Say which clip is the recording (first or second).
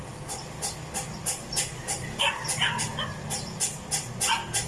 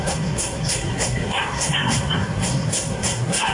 first